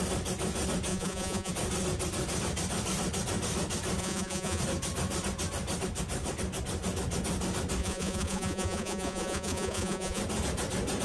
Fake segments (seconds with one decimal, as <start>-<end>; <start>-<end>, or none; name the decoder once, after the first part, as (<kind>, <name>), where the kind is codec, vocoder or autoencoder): 0.9-1.5 (vocoder, Vocos); 4.0-4.6; 7.8-10.2

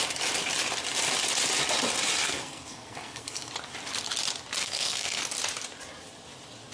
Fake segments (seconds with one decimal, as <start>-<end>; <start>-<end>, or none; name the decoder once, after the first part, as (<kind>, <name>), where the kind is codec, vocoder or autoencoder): 2.2-3.5 (codec, SNAC); 4.6-5.2

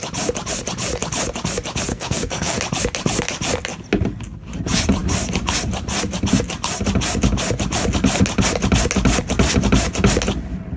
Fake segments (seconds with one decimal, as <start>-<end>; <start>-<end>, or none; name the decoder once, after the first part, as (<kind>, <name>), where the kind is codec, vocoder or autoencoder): 1.9-2.6 (codec, SNAC)

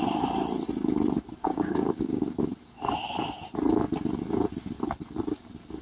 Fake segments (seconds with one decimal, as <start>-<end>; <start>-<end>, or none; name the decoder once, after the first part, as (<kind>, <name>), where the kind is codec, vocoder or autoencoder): 1.5-2.2 (codec, DAC)

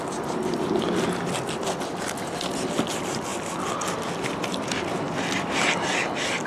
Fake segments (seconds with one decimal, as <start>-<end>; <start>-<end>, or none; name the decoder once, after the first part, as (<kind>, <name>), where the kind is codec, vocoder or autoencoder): none